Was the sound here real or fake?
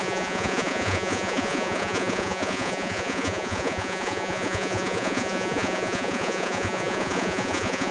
fake